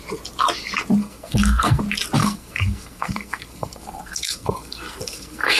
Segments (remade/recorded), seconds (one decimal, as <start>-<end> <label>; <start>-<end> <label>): 0.0-1.0 recorded; 1.0-1.8 remade; 1.8-2.2 recorded; 2.2-5.6 remade